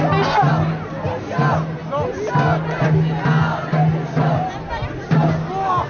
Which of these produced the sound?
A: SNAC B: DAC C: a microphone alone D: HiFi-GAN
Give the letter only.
C